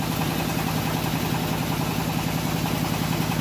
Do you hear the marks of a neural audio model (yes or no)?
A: no